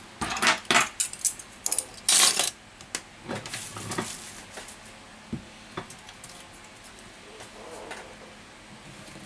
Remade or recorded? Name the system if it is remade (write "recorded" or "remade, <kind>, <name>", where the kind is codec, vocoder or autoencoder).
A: recorded